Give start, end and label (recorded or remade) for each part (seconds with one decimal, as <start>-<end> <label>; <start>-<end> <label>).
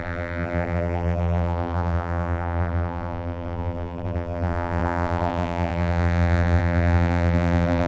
0.0-7.9 remade